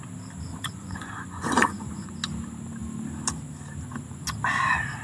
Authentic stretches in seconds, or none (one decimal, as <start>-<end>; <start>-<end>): 0.0-0.5; 2.1-5.0